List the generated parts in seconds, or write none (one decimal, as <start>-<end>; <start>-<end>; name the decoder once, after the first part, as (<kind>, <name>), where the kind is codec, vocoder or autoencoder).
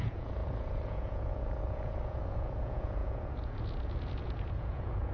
0.0-5.1 (vocoder, Vocos)